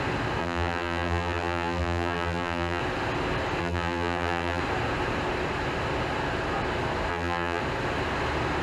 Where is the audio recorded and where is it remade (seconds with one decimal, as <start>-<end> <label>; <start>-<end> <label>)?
0.0-0.4 recorded; 0.4-2.8 remade; 2.8-3.6 recorded; 3.6-4.6 remade; 4.6-7.1 recorded; 7.1-7.6 remade; 7.6-8.6 recorded